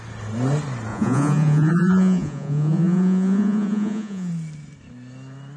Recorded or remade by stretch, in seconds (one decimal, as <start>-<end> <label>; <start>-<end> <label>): 0.0-0.9 recorded; 0.9-4.3 remade; 4.3-5.6 recorded